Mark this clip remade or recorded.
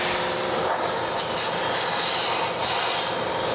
recorded